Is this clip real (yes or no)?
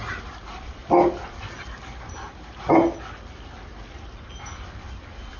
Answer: yes